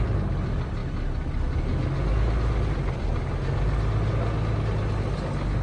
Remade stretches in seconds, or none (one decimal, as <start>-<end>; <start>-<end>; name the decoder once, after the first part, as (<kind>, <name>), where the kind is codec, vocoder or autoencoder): none